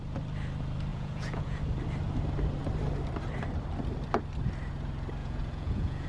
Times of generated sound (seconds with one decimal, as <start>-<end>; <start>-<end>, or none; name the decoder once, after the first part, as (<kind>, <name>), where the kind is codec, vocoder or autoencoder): 0.9-1.6 (vocoder, Vocos); 5.2-6.1